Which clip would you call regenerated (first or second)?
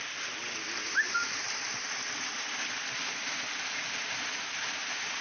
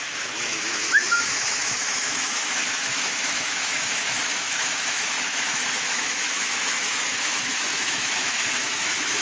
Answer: second